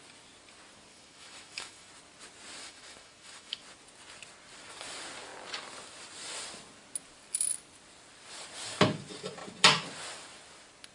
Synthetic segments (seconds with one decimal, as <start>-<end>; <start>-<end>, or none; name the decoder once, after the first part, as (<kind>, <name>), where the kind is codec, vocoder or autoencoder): 0.9-1.9 (autoencoder, DAC-VAE); 2.6-3.6